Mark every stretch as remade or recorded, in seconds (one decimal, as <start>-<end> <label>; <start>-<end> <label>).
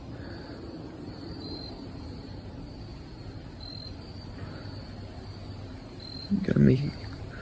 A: 0.0-0.6 recorded; 0.6-2.9 remade; 2.9-6.2 recorded; 6.2-7.4 remade